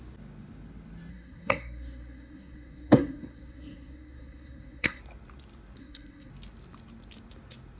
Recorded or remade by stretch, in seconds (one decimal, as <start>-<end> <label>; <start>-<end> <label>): 0.0-1.1 recorded; 1.1-5.0 remade; 5.0-5.8 recorded; 5.8-6.3 remade; 6.3-7.8 recorded